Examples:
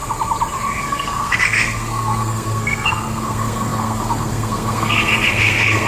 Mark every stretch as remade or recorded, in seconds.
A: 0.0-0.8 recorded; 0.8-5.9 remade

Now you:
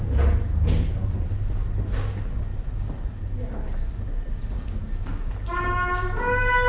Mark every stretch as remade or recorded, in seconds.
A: 0.0-6.7 recorded

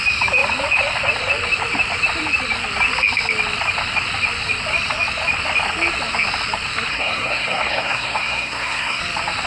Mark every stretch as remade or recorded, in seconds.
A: 0.0-6.9 recorded; 6.9-9.0 remade; 9.0-9.5 recorded

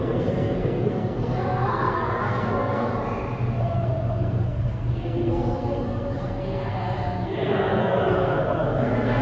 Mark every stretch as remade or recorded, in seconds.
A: 0.0-2.9 remade; 2.9-3.6 recorded; 3.6-9.2 remade

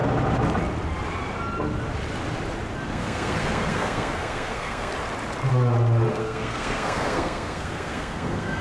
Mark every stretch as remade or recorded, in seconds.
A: 0.0-2.9 recorded; 2.9-4.9 remade; 4.9-6.1 recorded; 6.1-8.6 remade

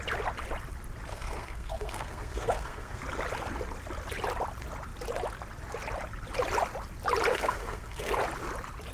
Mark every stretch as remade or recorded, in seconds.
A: 0.0-1.1 recorded; 1.1-3.0 remade; 3.0-7.3 recorded; 7.3-8.1 remade; 8.1-8.9 recorded